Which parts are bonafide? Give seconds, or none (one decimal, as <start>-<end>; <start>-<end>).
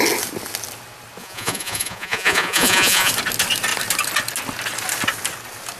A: 0.0-1.2; 3.1-5.8